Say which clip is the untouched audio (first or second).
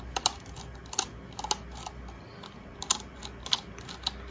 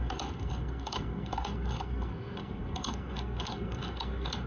first